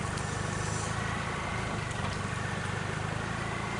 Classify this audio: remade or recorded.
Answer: recorded